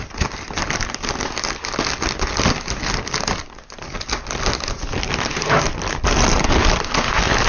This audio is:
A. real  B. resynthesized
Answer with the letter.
A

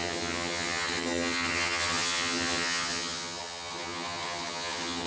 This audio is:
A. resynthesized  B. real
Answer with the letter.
A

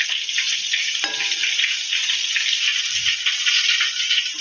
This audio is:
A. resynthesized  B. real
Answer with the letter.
B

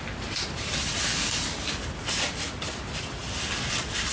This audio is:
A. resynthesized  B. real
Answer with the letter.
B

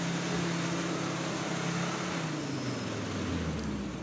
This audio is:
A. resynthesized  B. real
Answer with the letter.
B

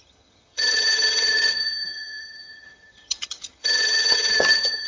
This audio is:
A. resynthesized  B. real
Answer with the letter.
A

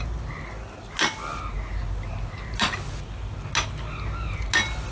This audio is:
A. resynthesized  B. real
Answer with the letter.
B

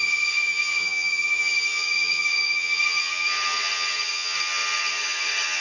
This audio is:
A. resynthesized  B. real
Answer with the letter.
A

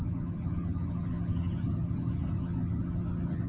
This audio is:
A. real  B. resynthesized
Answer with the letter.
B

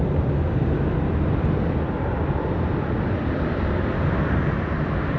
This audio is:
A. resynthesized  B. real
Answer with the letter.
B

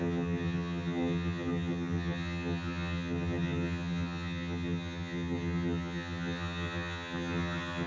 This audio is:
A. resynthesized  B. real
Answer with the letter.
A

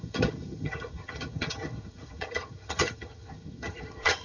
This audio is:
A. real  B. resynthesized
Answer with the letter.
B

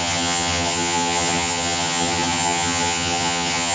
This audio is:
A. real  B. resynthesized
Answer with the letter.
B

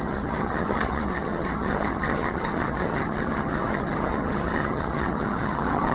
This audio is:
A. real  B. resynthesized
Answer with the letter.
B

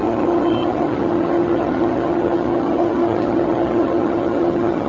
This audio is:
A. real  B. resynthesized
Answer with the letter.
B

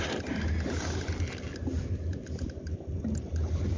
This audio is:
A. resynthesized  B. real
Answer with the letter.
B